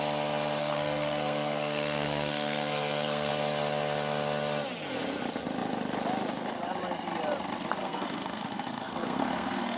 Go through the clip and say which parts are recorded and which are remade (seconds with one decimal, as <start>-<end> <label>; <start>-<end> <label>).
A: 0.0-0.6 recorded; 0.6-3.3 remade; 3.3-7.8 recorded; 7.8-9.8 remade